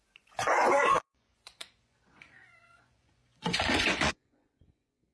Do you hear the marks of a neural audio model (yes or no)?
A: yes